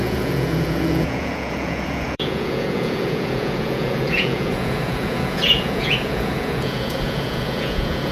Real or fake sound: fake